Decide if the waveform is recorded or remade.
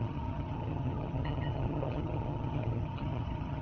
remade